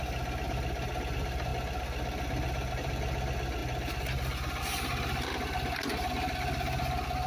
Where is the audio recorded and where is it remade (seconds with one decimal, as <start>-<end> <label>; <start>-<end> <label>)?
0.0-7.3 recorded